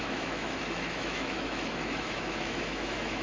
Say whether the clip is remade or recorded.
remade